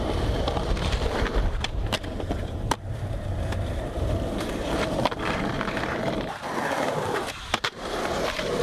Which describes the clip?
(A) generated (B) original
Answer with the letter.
A